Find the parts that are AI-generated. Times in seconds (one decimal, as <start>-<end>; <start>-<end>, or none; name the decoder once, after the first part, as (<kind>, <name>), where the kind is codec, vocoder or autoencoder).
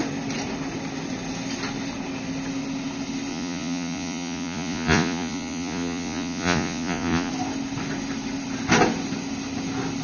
3.3-7.3 (vocoder, Vocos)